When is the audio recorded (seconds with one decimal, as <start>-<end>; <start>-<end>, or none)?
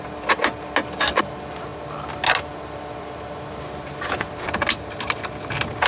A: 0.0-5.9